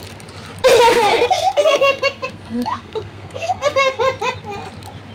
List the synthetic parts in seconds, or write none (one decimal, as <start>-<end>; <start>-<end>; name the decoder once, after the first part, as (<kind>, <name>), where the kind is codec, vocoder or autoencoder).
0.9-4.0 (codec, SNAC)